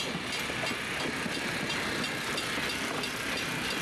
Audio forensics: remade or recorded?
recorded